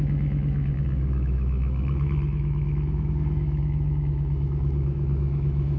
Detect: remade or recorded remade